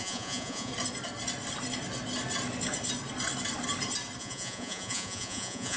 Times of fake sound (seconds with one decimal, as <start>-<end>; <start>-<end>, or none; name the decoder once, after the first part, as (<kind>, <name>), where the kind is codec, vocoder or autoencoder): 0.0-0.7 (vocoder, Vocos); 4.2-5.8